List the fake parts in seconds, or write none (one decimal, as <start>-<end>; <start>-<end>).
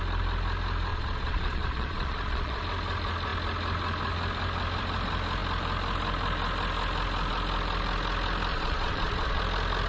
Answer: 0.9-2.6; 8.5-9.4